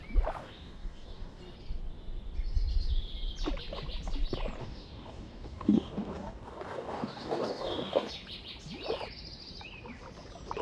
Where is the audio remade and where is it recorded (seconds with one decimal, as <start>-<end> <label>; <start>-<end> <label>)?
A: 0.0-0.4 recorded; 0.4-1.4 remade; 1.4-4.6 recorded; 4.6-8.1 remade; 8.1-10.6 recorded

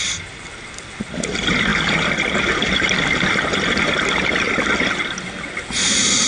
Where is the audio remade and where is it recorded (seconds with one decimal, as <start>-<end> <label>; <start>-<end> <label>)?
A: 0.0-6.3 recorded

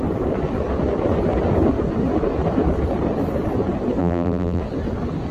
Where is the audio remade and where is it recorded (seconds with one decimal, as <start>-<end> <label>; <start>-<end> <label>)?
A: 0.0-4.0 recorded; 4.0-4.6 remade; 4.6-5.3 recorded

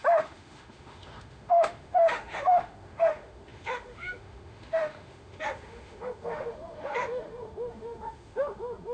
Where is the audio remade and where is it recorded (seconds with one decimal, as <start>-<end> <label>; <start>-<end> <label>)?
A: 0.0-8.9 remade

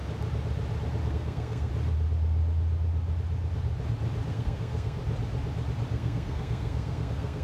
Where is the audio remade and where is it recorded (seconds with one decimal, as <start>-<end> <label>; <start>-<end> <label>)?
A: 0.0-1.1 recorded; 1.1-1.7 remade; 1.7-4.3 recorded; 4.3-5.0 remade; 5.0-5.9 recorded; 5.9-7.4 remade

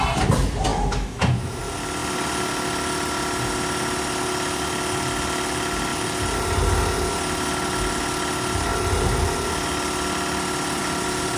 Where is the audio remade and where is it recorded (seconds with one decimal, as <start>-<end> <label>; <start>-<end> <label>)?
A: 0.0-0.7 recorded; 0.7-1.6 remade; 1.6-11.4 recorded

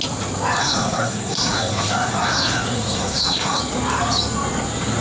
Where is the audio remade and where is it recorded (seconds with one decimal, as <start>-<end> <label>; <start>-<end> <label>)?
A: 0.0-0.6 recorded; 0.6-3.6 remade; 3.6-5.0 recorded